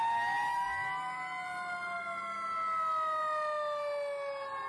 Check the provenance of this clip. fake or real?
real